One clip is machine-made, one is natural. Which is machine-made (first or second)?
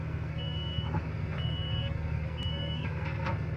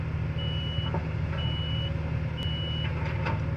first